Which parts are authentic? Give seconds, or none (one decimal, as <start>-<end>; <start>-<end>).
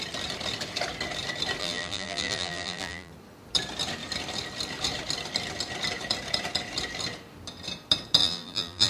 0.0-1.6; 3.1-8.2